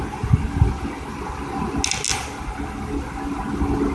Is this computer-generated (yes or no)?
no